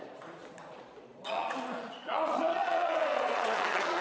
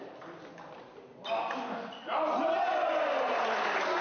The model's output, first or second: first